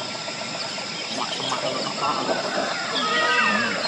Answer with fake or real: real